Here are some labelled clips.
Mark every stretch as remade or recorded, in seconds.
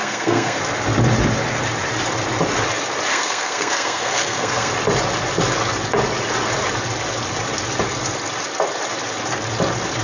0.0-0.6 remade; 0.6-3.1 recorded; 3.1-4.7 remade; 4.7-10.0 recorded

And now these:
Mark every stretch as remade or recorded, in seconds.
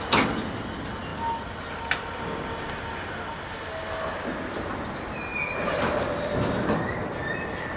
0.0-7.8 recorded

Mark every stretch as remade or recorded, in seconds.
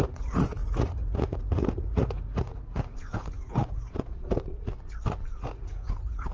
0.0-4.7 remade; 4.7-5.4 recorded; 5.4-6.3 remade